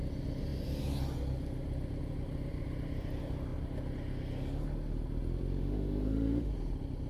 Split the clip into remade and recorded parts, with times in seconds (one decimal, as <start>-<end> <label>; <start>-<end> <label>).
0.0-5.6 recorded; 5.6-6.5 remade; 6.5-7.1 recorded